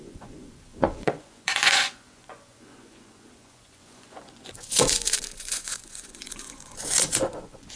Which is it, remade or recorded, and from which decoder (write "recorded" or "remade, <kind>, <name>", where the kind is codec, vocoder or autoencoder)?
remade, vocoder, Vocos